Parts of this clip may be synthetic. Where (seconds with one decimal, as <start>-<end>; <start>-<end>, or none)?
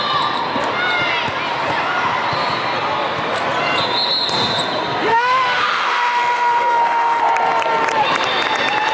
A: 5.1-7.2